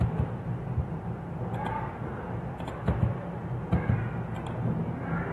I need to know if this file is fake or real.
real